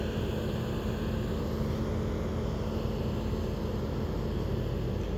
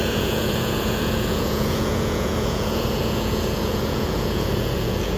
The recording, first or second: first